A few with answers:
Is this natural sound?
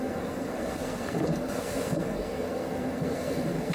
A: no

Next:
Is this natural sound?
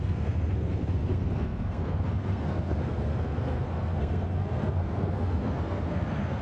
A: no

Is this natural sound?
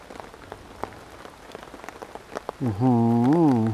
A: yes